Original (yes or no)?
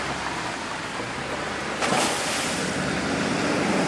yes